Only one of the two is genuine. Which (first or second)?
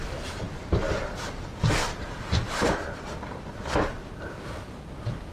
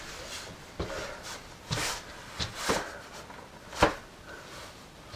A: second